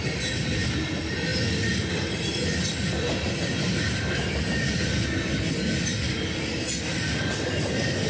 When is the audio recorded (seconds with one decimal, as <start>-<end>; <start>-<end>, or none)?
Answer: 0.0-8.1